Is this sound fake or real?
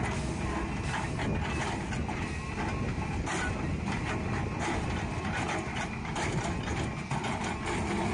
real